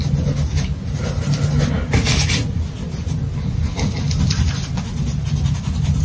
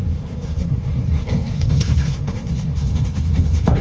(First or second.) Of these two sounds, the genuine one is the first